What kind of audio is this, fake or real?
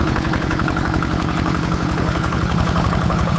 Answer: fake